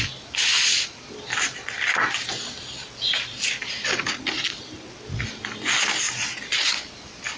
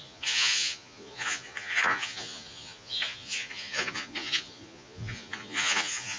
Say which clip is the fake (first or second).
second